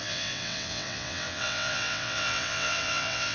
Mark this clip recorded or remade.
remade